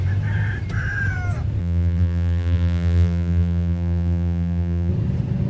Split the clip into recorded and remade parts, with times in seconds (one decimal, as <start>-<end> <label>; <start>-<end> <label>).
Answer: 0.0-1.6 recorded; 1.6-4.9 remade; 4.9-5.5 recorded